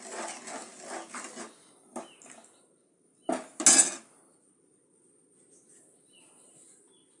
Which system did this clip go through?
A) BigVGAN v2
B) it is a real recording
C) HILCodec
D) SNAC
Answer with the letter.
B